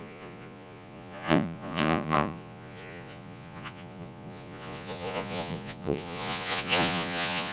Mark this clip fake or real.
fake